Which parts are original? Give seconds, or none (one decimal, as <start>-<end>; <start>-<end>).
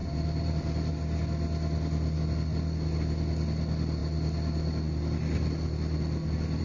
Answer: 0.9-6.6